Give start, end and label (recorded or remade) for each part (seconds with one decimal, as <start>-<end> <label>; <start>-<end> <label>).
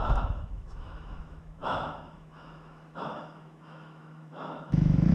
0.0-5.1 remade